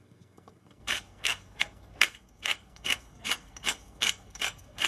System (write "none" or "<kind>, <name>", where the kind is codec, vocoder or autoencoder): codec, SNAC